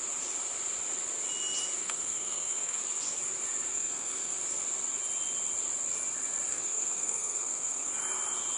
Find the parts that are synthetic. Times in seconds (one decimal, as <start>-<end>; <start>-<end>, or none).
1.8-2.8; 3.7-4.4; 6.5-7.9

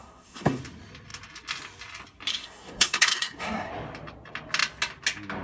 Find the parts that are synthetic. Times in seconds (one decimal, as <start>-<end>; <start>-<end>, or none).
0.0-0.6; 2.3-3.7

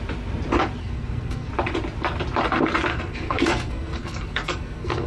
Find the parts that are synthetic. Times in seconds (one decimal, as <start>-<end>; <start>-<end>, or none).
0.8-1.5; 2.9-5.1

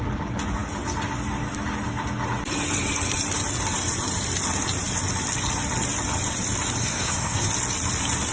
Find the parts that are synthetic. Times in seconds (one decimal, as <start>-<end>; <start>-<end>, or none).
6.8-7.5

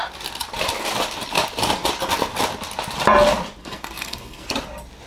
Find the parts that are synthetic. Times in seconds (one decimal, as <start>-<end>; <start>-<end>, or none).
3.6-4.5

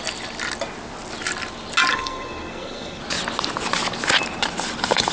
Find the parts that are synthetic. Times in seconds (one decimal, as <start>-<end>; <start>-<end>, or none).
1.9-3.0

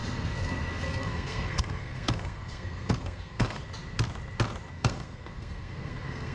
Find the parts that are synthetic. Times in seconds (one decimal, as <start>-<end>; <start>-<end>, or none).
0.0-3.6; 4.7-6.3